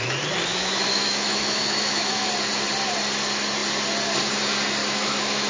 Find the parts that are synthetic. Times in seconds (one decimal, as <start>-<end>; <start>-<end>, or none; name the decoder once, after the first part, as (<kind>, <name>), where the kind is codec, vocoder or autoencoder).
0.5-2.3 (autoencoder, DAC-VAE); 4.8-5.5